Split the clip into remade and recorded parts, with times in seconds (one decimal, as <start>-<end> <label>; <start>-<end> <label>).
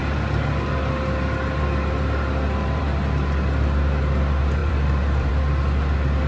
0.0-4.6 recorded; 4.6-5.3 remade; 5.3-6.3 recorded